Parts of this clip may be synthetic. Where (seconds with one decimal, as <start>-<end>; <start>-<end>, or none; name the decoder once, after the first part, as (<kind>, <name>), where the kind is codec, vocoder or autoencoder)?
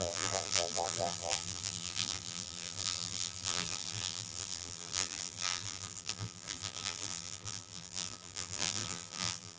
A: 0.0-9.6 (vocoder, BigVGAN v2)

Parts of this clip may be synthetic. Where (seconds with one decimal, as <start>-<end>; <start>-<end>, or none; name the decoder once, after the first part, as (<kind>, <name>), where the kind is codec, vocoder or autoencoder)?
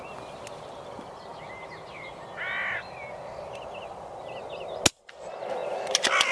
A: none